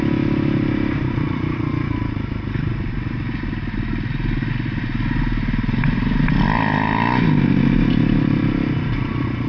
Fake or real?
real